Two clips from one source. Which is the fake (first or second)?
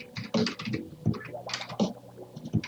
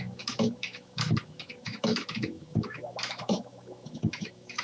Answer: second